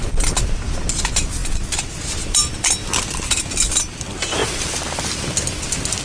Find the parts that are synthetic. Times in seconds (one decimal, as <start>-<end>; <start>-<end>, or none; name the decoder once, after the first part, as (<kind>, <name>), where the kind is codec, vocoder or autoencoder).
none